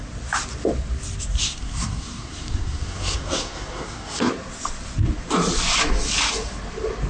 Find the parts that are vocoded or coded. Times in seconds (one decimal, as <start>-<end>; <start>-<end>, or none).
1.4-4.3